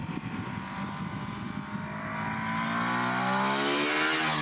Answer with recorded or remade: recorded